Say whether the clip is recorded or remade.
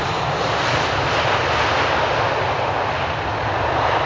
recorded